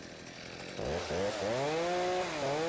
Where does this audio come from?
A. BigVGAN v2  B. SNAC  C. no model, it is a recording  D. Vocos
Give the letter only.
C